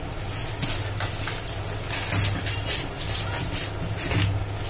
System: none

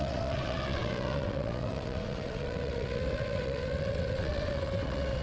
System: vocoder, WaveNeXt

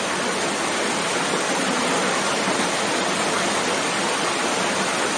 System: none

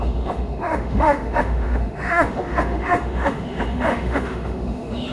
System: autoencoder, DAC-VAE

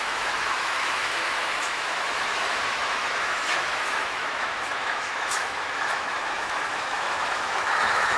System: autoencoder, DAC-VAE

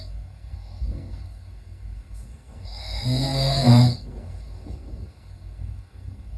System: codec, SNAC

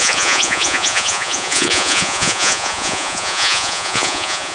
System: vocoder, Vocos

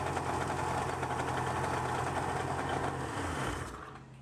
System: none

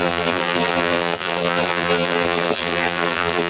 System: vocoder, BigVGAN v2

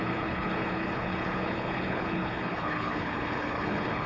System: codec, HILCodec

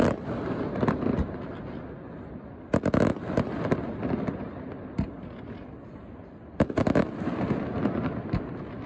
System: none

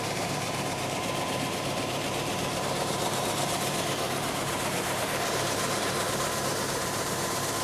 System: vocoder, BigVGAN v2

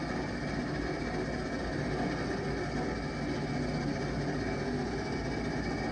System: none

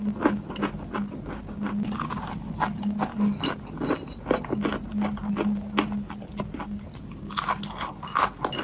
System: none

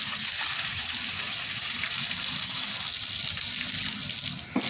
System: none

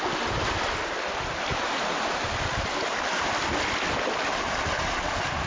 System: none